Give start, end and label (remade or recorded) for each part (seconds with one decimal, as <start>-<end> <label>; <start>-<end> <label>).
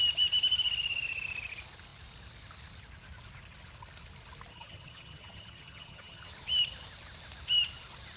0.0-4.5 recorded; 4.5-6.3 remade; 6.3-8.2 recorded